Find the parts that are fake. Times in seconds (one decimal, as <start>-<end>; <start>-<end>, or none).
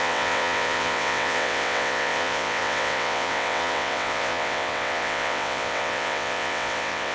0.0-7.1